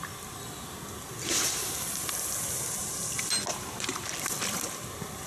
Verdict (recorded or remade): recorded